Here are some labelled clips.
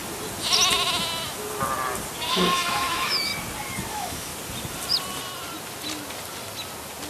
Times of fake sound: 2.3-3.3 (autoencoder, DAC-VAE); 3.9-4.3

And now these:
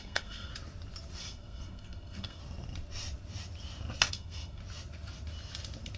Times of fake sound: 0.0-0.5 (codec, SNAC); 1.2-2.4; 4.1-4.6

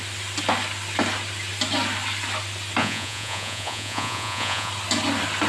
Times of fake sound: 2.8-4.7 (vocoder, Vocos)

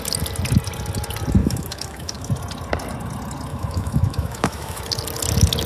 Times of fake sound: 1.4-2.3 (autoencoder, DAC-VAE); 3.5-4.8

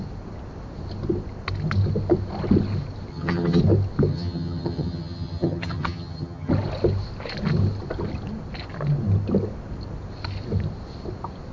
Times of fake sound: 3.1-3.6 (vocoder, HiFi-GAN); 4.1-6.5

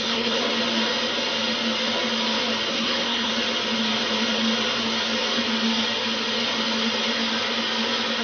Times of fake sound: 0.0-0.4 (codec, SNAC); 2.7-3.3

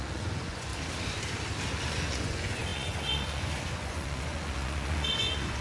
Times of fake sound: 0.0-0.7 (vocoder, Vocos); 1.8-5.6

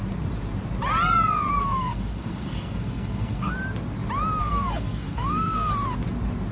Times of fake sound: 1.6-3.5 (codec, SNAC); 4.4-5.7